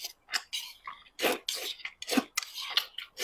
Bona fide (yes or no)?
yes